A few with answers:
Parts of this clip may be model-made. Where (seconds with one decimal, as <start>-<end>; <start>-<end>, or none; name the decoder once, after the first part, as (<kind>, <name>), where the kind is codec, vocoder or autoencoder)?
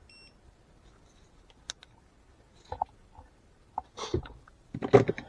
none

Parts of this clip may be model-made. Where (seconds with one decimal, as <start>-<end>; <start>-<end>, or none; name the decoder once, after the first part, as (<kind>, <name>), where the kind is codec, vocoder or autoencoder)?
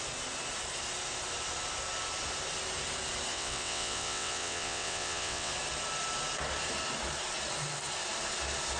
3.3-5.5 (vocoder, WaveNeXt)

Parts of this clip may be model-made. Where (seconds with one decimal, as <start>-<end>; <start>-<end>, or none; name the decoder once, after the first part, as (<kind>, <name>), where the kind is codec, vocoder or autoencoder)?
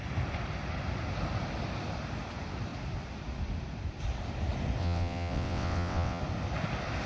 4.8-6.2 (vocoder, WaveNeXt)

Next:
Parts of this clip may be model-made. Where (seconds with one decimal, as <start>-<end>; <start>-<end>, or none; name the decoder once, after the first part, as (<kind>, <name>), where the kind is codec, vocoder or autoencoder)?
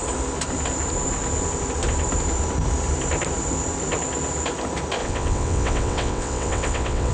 5.0-7.1 (vocoder, WaveNeXt)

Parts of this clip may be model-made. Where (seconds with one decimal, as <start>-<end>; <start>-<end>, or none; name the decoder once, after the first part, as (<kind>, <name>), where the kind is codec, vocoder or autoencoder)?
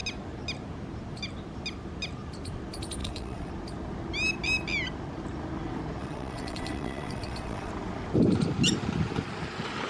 3.0-3.5 (vocoder, WaveNeXt); 6.0-7.7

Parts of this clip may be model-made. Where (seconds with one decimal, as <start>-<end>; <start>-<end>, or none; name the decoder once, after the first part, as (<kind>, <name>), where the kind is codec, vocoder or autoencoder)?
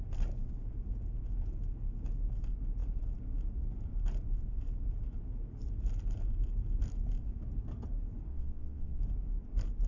8.3-9.0 (vocoder, WaveNeXt)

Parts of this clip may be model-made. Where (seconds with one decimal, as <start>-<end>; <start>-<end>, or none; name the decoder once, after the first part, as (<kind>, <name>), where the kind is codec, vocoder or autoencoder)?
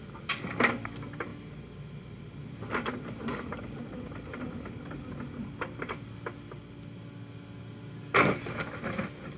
none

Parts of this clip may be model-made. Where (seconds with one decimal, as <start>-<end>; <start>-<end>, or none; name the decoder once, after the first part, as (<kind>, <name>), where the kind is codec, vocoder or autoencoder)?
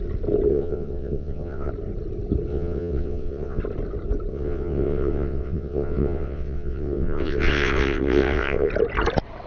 0.5-1.7 (vocoder, WaveNeXt); 2.5-3.6; 4.3-8.7